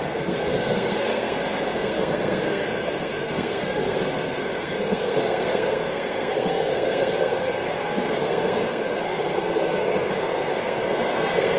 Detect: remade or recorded remade